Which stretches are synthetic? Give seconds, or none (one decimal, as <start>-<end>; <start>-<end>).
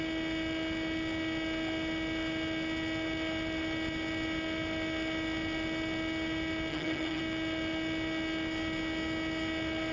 6.7-7.2